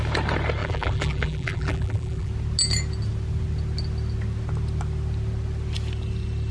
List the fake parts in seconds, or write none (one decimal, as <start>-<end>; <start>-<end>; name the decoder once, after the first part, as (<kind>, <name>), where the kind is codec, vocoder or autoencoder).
0.6-2.3 (vocoder, BigVGAN v2)